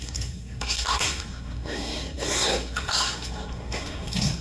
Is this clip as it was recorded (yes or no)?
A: no